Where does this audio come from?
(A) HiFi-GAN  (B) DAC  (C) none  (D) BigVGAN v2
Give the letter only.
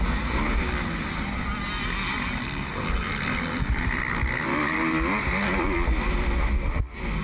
C